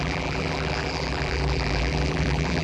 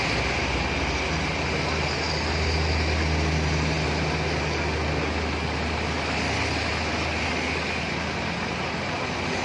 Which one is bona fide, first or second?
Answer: second